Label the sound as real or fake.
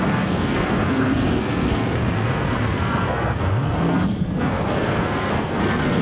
fake